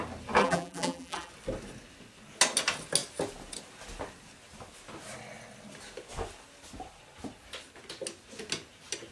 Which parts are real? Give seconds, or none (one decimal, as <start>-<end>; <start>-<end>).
0.0-0.4; 1.3-9.1

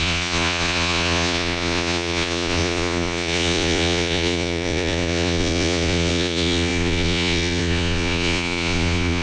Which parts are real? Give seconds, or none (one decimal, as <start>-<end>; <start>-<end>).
none

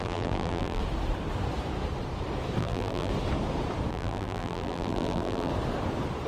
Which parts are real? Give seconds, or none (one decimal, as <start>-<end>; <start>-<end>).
0.8-2.6; 3.1-3.9; 5.5-6.3

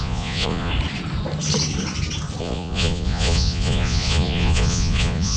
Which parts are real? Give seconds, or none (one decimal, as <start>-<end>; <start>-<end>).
0.7-2.4

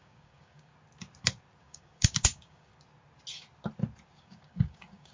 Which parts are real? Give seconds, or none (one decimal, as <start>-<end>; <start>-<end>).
0.7-1.6; 2.7-4.2

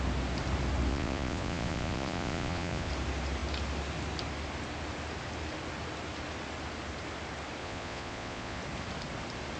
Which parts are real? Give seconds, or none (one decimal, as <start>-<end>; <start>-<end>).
0.0-0.9; 2.9-7.6; 8.6-9.6

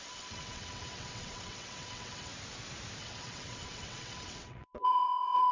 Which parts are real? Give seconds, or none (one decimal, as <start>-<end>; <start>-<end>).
2.3-3.0